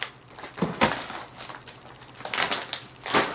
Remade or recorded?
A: recorded